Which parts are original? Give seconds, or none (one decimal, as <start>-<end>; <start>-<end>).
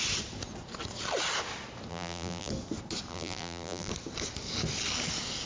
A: 0.0-1.9; 2.5-3.1; 3.9-5.5